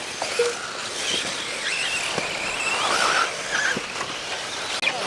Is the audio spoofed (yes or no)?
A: no